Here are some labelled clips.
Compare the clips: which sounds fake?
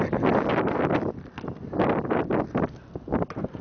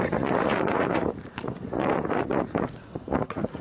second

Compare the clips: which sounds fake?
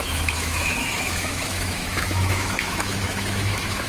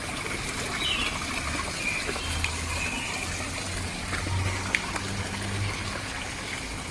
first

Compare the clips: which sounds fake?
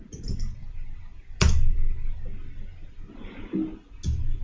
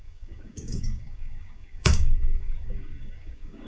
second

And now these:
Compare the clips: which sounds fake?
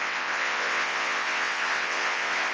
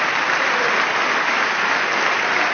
first